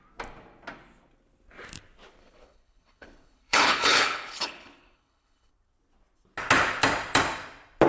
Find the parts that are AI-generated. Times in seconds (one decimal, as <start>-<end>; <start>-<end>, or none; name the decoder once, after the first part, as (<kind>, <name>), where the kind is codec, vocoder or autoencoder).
2.2-5.5 (codec, HILCodec)